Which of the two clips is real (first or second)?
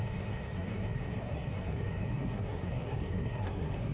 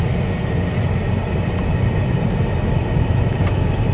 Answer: second